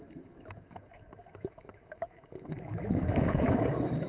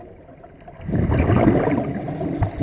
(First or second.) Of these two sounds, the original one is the second